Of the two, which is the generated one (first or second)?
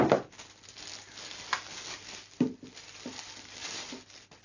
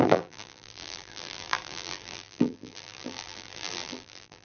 second